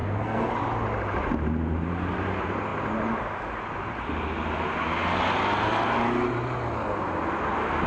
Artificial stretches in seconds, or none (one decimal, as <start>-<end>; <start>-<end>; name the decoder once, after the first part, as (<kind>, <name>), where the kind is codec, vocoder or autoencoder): 0.0-0.5 (codec, SNAC)